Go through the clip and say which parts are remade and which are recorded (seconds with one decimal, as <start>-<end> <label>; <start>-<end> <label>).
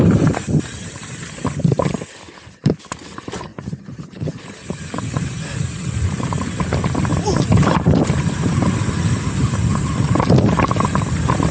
0.0-7.1 recorded; 7.1-8.7 remade; 8.7-11.5 recorded